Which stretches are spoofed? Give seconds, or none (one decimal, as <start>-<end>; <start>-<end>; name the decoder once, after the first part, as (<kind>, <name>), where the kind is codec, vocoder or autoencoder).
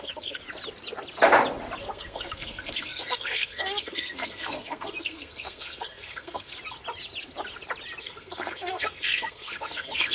0.0-0.4 (codec, SNAC); 1.8-6.5; 8.0-10.1